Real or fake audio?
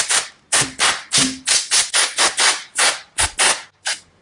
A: real